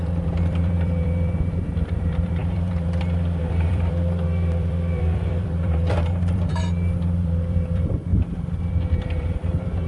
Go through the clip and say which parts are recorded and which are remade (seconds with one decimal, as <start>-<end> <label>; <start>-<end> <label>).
0.0-8.1 remade; 8.1-8.7 recorded; 8.7-9.9 remade